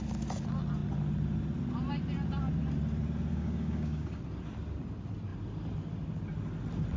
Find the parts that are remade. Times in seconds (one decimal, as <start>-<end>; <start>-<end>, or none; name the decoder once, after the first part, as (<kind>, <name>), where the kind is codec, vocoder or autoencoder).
3.3-4.2 (codec, DAC)